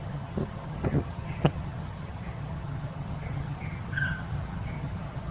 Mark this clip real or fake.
fake